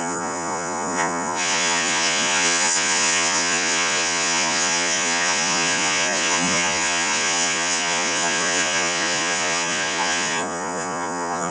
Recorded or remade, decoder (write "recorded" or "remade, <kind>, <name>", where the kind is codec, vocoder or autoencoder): remade, vocoder, Vocos